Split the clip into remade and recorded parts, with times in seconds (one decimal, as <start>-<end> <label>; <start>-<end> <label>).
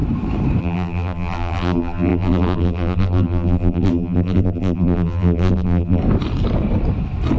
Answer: 0.0-0.6 recorded; 0.6-6.0 remade; 6.0-7.4 recorded